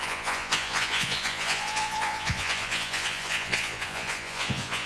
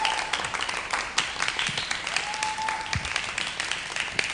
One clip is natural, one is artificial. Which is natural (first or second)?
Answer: second